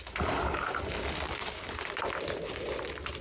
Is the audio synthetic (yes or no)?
yes